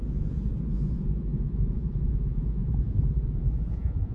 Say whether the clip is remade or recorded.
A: remade